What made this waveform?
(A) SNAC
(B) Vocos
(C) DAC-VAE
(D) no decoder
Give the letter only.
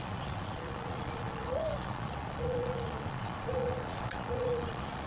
B